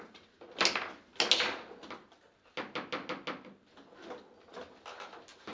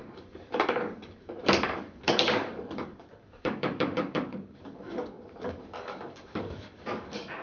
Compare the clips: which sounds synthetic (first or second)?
second